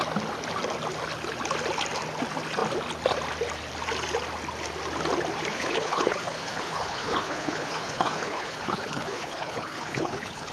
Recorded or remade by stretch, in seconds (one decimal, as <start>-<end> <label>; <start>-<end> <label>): 0.0-5.5 recorded; 5.5-10.5 remade